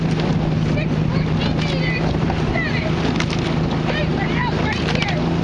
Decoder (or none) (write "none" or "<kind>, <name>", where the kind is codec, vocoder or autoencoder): none